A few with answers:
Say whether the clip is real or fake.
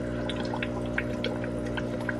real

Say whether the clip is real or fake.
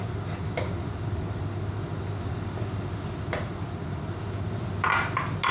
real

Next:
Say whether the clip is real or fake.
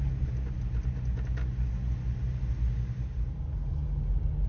real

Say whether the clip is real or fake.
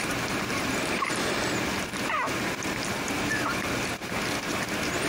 real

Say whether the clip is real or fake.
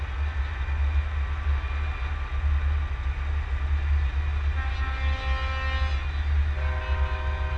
real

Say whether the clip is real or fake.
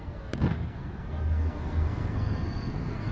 fake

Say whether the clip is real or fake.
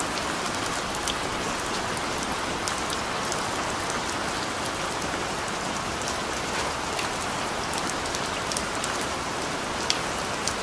real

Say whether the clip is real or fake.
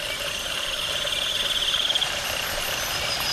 fake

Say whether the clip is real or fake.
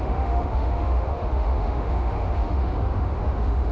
fake